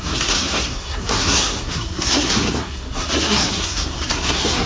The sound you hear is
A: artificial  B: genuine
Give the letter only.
A